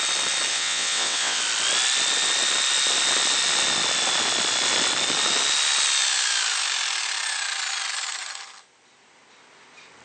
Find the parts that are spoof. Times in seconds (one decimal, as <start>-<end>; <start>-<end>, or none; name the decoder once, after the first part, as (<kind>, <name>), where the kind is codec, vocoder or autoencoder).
0.5-1.4 (vocoder, WaveNeXt)